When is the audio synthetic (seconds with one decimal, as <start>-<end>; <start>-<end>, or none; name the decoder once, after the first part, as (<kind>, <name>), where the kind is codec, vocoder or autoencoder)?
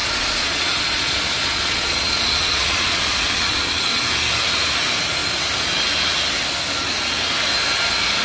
0.0-4.0 (vocoder, Vocos)